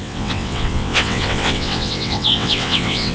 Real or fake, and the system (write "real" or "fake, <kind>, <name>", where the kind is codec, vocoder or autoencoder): fake, vocoder, WaveNeXt